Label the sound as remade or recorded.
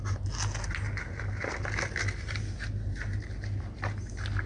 recorded